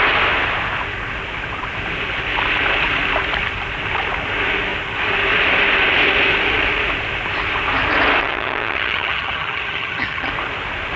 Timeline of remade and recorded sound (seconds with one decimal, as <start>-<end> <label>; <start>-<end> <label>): 0.0-8.2 recorded; 8.2-10.3 remade; 10.3-11.0 recorded